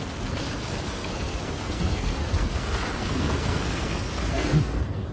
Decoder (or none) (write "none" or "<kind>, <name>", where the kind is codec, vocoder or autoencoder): codec, SNAC